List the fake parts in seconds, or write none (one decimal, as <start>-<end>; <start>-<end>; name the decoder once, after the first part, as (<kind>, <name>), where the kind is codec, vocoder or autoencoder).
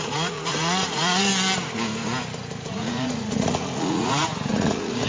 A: 0.0-1.3 (vocoder, Vocos); 2.7-5.1